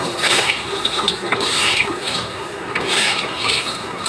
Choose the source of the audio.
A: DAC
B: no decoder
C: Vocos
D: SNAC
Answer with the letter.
D